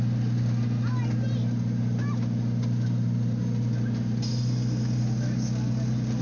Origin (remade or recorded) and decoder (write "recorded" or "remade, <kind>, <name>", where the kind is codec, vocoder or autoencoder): recorded